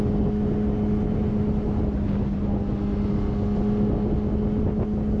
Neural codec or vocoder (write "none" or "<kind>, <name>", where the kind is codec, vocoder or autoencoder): none